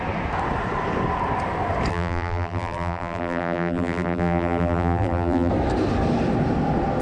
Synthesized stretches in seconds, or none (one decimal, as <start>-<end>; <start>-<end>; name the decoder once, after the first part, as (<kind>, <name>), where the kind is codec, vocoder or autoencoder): 1.9-5.5 (vocoder, BigVGAN v2)